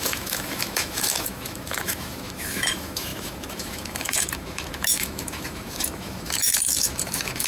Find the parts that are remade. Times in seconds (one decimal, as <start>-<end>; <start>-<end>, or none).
0.0-7.5